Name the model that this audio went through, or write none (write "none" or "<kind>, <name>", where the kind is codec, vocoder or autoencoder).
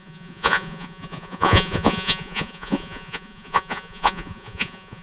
vocoder, Vocos